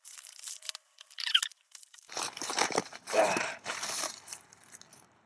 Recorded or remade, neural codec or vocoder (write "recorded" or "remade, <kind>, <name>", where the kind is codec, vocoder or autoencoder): remade, vocoder, BigVGAN v2